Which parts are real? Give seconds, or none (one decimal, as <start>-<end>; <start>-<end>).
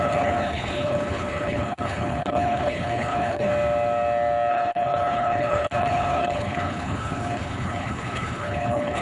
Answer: 3.5-4.5